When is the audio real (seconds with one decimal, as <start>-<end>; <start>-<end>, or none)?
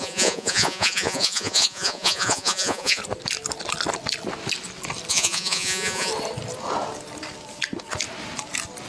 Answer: 3.0-5.1; 6.1-8.9